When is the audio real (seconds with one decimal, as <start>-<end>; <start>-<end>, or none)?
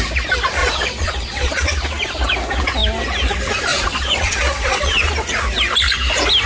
0.0-0.6; 1.7-3.7; 5.1-6.5